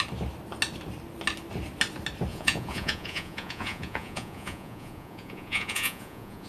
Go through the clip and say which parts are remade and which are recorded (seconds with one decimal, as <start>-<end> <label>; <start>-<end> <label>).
0.0-2.3 recorded; 2.3-6.5 remade